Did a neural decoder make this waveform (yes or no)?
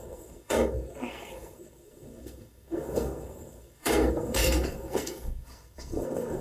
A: yes